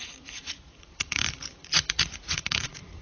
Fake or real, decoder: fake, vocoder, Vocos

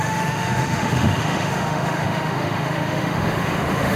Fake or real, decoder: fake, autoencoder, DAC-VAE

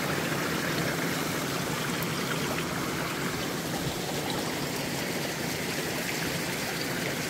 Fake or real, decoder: real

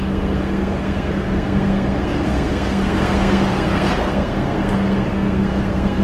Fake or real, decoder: fake, codec, SNAC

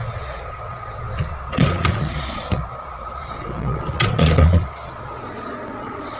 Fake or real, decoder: fake, vocoder, Vocos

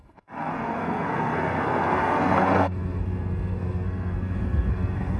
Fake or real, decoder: fake, codec, SNAC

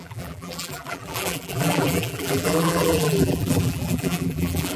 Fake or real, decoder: fake, vocoder, BigVGAN v2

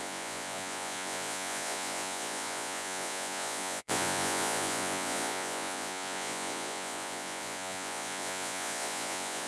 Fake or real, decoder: fake, vocoder, Vocos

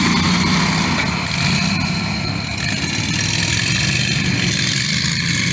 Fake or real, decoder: real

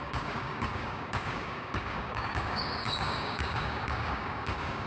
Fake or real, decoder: fake, codec, DAC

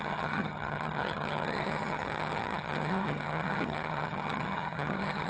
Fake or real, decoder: fake, vocoder, HiFi-GAN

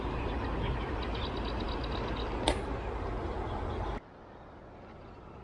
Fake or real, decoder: real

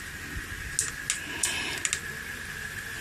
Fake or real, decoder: real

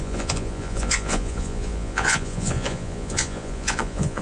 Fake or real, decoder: fake, vocoder, Vocos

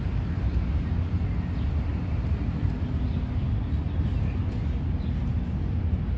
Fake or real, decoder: real